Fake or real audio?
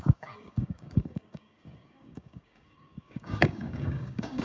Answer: fake